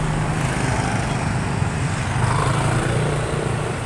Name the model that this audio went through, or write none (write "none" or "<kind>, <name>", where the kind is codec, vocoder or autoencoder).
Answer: none